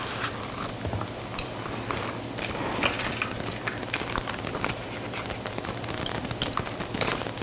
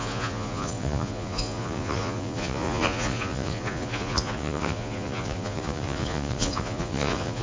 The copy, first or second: second